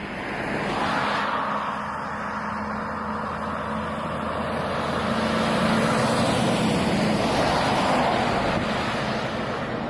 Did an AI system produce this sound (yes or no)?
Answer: no